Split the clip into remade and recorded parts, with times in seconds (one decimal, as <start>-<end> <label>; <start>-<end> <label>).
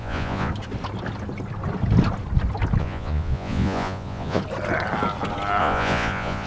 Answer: 0.0-0.5 remade; 0.5-2.8 recorded; 2.8-4.4 remade; 4.4-5.6 recorded; 5.6-6.5 remade